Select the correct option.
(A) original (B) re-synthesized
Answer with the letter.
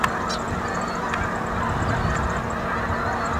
A